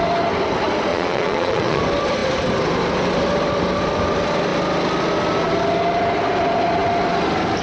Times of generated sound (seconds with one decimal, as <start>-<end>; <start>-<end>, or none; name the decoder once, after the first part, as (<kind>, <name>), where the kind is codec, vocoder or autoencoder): 0.9-1.8 (vocoder, Vocos)